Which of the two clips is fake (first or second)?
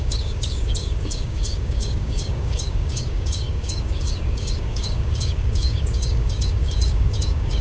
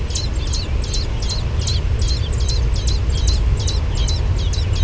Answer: first